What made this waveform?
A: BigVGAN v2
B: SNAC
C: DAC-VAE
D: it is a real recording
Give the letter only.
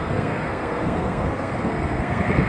B